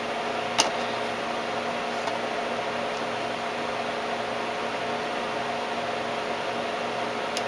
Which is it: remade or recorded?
recorded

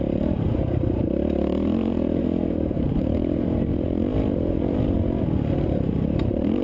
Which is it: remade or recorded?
remade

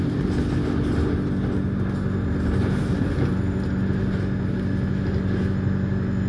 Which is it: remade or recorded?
recorded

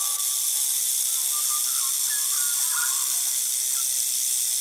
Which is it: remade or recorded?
recorded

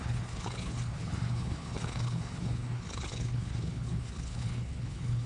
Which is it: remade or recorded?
remade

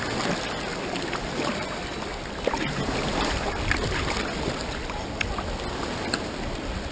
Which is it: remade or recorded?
recorded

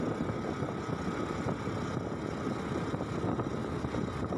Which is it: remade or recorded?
recorded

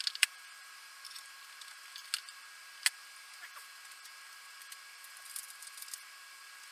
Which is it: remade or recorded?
recorded